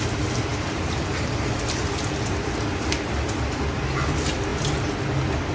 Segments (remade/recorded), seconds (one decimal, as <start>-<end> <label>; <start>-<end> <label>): 0.0-0.5 recorded; 0.5-3.8 remade; 3.8-5.5 recorded